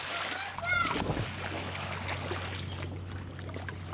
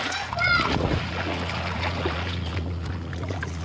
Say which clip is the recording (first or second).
first